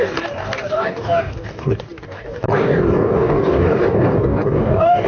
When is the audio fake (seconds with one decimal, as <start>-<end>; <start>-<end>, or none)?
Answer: 0.0-5.1